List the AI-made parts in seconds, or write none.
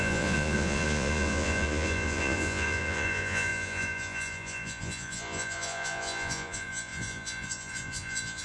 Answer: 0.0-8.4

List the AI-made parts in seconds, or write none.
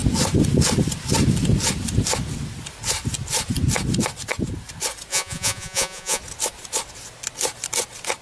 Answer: 5.1-6.2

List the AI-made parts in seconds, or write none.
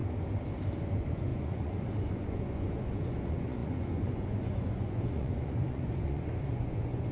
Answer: 0.8-7.1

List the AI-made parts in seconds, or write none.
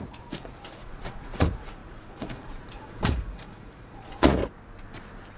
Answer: 0.0-4.4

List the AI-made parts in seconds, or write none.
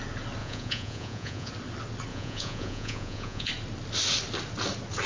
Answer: 0.4-1.5; 2.1-3.5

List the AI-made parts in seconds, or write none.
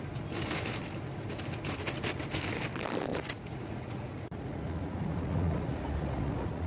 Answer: 3.1-6.7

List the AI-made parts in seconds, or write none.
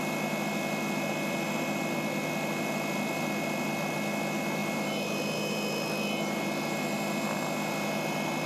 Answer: none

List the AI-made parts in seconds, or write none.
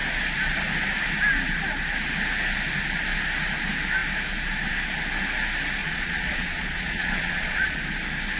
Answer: 5.8-7.8